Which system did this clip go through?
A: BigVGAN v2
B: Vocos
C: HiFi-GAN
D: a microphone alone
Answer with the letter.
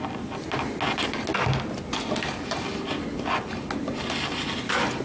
D